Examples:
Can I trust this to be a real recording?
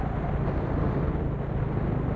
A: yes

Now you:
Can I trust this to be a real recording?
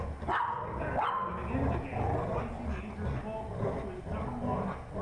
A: yes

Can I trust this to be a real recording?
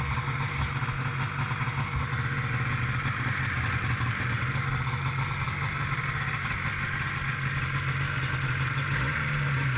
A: yes